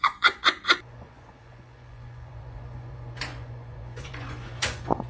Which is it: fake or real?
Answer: fake